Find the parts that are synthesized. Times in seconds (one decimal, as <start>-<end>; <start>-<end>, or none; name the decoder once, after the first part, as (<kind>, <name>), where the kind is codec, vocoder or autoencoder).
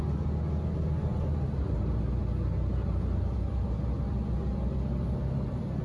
none